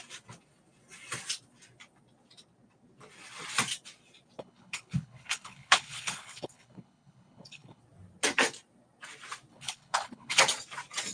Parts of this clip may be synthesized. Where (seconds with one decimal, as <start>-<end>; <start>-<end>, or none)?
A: 4.4-7.8; 9.5-10.4